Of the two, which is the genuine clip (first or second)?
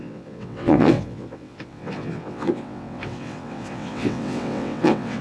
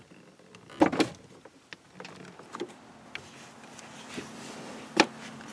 second